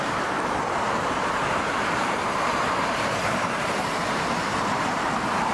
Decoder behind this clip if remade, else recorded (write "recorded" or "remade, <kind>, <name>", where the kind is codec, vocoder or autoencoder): remade, vocoder, BigVGAN v2